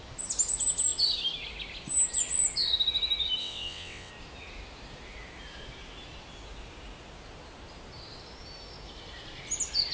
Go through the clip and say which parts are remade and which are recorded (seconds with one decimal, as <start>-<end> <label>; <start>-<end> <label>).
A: 0.0-3.4 recorded; 3.4-4.1 remade; 4.1-9.9 recorded